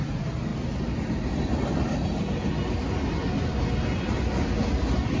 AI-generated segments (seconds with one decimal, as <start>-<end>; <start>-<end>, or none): none